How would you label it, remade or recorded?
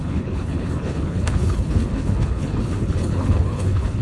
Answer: remade